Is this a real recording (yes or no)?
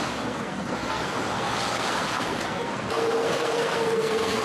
no